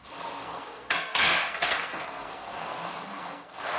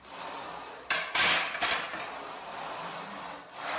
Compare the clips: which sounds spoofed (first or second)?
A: first